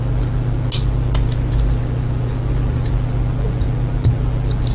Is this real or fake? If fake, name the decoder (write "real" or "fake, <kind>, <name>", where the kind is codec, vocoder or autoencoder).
real